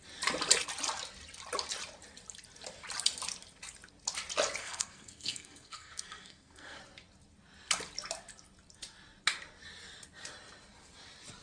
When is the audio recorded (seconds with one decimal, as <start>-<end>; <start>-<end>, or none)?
0.0-4.6; 6.8-11.4

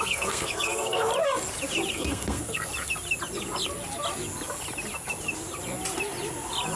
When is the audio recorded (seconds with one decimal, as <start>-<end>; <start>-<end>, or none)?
1.1-1.9; 2.7-6.8

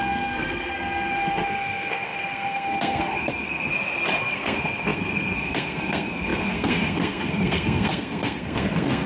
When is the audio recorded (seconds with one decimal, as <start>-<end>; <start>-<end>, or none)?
3.7-4.2

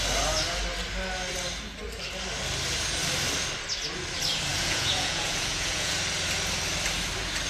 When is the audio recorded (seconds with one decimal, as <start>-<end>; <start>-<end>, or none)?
0.0-4.5; 5.9-7.5

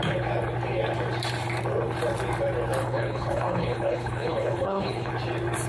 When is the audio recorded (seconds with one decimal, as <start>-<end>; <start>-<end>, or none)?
0.0-2.8; 5.1-5.7